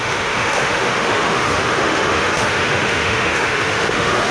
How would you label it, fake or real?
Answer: fake